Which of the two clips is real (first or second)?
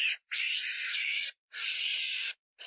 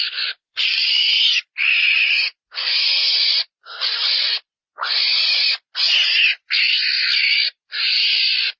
second